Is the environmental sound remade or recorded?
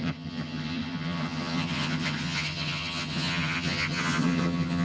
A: remade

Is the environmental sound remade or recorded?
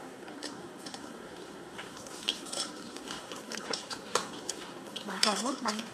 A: remade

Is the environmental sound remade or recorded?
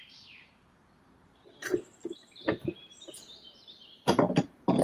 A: remade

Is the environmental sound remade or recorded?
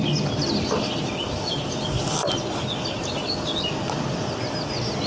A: recorded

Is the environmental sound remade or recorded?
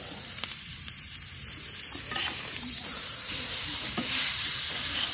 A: remade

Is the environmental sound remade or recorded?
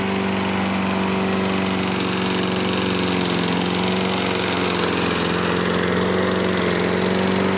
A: recorded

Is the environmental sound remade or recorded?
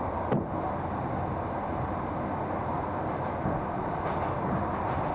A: recorded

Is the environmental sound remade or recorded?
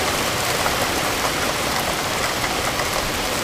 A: remade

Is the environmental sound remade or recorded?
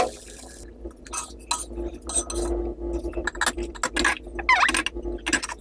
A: recorded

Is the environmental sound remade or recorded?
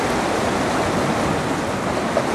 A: recorded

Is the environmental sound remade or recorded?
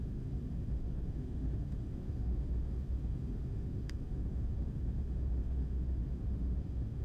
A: remade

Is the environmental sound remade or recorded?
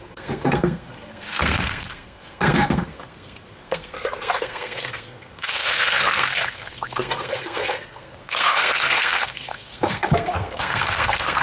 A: remade